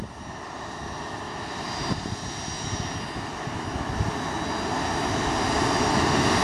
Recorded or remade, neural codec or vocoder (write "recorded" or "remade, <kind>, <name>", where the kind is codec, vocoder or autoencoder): recorded